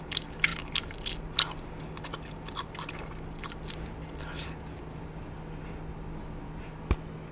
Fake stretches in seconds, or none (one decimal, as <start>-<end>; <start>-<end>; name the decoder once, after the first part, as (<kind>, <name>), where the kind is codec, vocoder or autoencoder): none